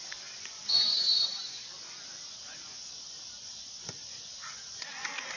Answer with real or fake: fake